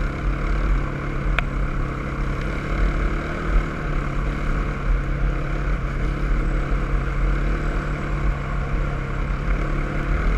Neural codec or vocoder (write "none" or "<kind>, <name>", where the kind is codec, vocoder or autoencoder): none